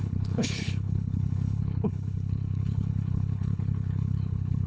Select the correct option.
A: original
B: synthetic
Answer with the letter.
B